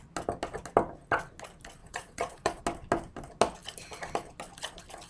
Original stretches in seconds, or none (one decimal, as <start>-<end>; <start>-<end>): 0.0-1.8; 2.6-5.1